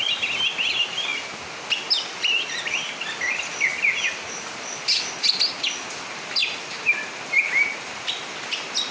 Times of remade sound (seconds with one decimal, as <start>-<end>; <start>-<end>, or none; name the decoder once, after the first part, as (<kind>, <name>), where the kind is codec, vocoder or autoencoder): none